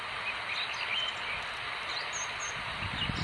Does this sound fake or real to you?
real